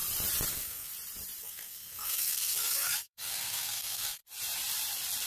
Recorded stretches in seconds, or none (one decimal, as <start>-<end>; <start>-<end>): 0.0-0.5; 0.9-1.4; 4.2-5.3